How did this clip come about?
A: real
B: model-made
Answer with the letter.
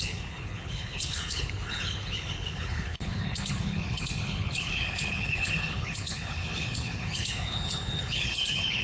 B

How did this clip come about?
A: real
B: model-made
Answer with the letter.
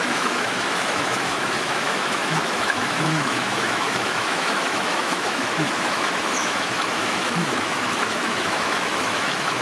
B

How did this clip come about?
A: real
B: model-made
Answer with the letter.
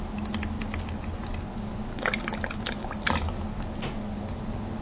A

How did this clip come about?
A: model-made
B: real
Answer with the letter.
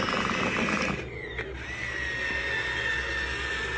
B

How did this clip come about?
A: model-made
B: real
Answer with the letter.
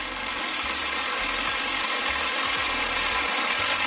A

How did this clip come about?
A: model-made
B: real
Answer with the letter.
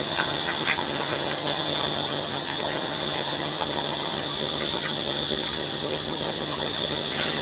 A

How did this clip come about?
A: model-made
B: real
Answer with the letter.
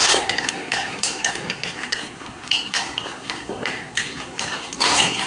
A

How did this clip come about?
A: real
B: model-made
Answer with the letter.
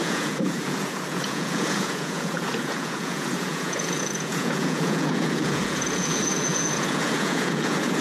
B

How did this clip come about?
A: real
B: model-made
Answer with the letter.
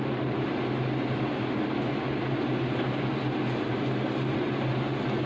A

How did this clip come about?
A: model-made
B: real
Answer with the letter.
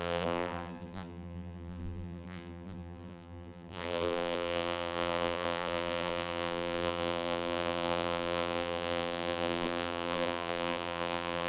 A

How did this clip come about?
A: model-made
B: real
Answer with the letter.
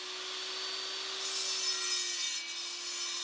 B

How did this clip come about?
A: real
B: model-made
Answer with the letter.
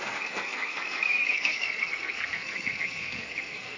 B